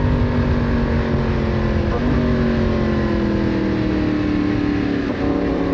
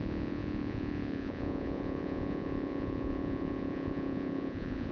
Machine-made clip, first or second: second